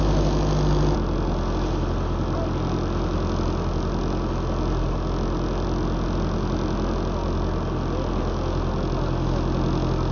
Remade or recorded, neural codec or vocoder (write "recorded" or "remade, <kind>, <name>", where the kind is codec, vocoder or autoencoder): recorded